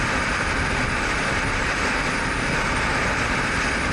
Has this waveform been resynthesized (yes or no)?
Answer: no